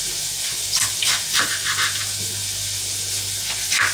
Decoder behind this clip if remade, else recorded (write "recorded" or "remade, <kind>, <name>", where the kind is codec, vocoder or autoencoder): recorded